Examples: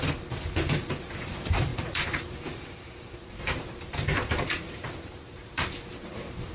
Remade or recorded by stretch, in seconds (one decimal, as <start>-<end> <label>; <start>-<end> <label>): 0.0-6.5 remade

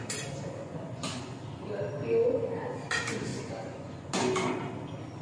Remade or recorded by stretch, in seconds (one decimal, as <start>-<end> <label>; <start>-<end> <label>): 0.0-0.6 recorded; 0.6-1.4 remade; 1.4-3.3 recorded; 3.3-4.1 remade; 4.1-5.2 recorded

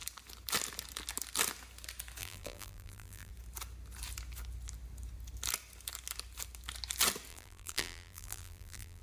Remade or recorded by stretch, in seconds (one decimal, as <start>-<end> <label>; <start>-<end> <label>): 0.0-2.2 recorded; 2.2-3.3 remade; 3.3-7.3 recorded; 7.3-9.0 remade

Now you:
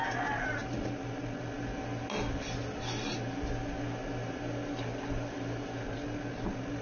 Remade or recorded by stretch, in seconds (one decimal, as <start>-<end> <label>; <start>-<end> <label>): 0.0-6.8 recorded

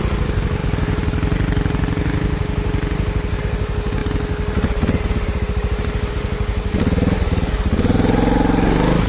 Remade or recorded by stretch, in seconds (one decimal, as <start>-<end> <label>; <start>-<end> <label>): 0.0-9.1 recorded

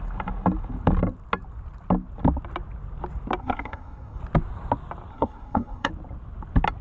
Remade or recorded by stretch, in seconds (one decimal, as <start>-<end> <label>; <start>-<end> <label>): 0.0-3.4 recorded; 3.4-4.2 remade; 4.2-5.1 recorded; 5.1-5.9 remade; 5.9-6.8 recorded

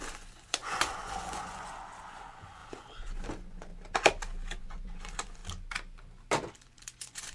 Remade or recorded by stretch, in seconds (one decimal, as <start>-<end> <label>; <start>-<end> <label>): 0.0-3.7 remade; 3.7-4.6 recorded; 4.6-5.4 remade; 5.4-6.5 recorded; 6.5-7.3 remade

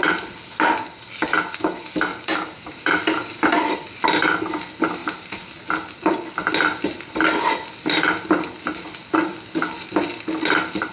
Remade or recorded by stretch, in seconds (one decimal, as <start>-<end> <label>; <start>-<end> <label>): 0.0-2.1 recorded; 2.1-3.5 remade; 3.5-5.0 recorded; 5.0-5.5 remade; 5.5-10.9 recorded